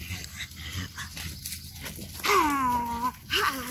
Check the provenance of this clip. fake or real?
real